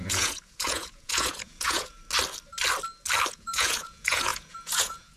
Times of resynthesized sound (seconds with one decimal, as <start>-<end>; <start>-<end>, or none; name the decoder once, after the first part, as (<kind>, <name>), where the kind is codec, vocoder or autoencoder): 0.0-2.0 (vocoder, Vocos); 3.3-5.2